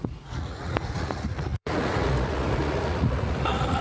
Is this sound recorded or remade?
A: remade